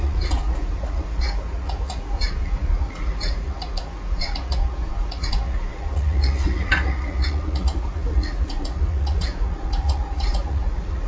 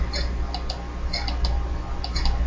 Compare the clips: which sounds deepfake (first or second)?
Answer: first